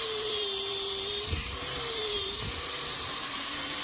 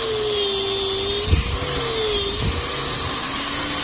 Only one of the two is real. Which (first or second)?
second